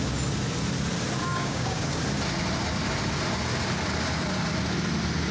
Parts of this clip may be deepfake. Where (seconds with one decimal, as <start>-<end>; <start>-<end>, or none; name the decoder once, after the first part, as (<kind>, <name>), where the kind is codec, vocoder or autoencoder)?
1.3-2.0 (codec, DAC)

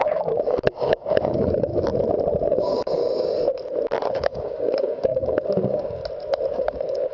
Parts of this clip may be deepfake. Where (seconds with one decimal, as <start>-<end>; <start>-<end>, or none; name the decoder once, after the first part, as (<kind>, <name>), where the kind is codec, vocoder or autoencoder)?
0.0-1.7 (codec, DAC); 2.5-3.0; 4.1-6.0; 6.5-7.1

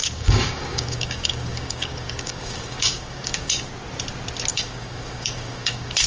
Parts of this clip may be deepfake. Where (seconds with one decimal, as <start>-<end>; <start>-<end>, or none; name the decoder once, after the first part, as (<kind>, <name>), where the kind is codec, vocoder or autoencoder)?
0.0-3.7 (codec, DAC); 4.5-6.1

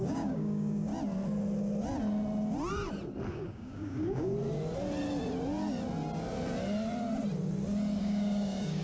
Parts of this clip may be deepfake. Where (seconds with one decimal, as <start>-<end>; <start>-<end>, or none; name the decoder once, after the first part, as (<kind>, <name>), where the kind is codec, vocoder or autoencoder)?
0.0-0.9 (codec, DAC); 3.3-4.3; 8.0-8.8

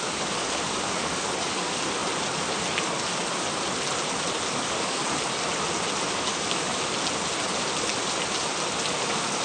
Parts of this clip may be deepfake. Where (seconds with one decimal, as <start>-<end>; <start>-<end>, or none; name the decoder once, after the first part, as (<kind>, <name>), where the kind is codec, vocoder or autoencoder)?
0.0-2.0 (codec, DAC); 4.5-5.0; 6.1-6.7; 9.0-9.4

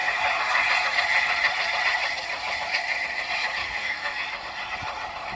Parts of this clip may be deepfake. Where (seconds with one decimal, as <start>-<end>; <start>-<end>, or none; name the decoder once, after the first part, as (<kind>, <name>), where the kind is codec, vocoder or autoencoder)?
3.6-4.5 (codec, DAC)